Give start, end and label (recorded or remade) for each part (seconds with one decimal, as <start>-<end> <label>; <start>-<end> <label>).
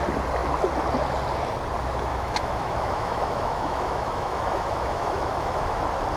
0.0-2.1 recorded; 2.1-5.8 remade; 5.8-6.2 recorded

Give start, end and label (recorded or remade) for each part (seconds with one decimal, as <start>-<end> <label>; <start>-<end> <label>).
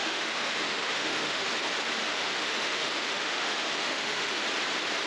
0.0-1.5 remade; 1.5-2.1 recorded; 2.1-4.4 remade; 4.4-5.1 recorded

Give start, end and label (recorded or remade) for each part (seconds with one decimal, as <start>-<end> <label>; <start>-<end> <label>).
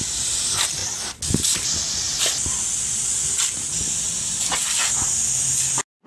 0.0-6.1 recorded